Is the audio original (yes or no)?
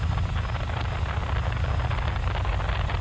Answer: yes